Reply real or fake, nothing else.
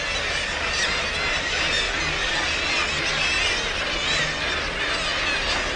real